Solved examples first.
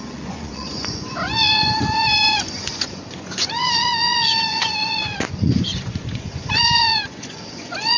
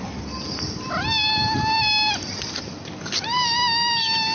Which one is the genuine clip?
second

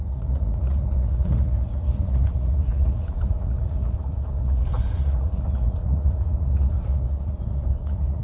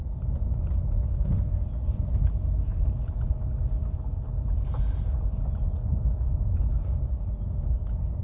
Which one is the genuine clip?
second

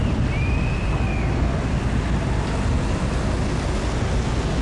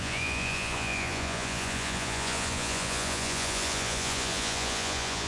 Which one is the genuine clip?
first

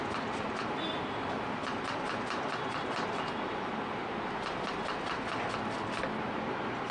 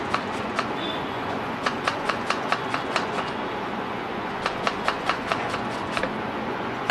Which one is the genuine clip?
first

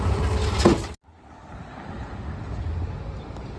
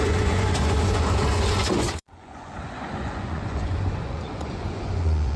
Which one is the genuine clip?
first